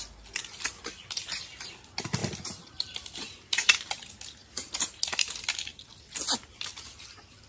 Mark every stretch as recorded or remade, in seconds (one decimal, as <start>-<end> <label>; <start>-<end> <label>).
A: 0.0-5.7 recorded; 5.7-6.7 remade; 6.7-7.5 recorded